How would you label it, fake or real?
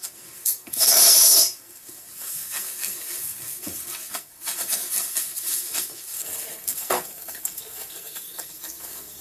fake